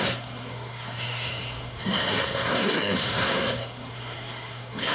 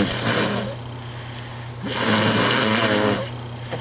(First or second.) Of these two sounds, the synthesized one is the first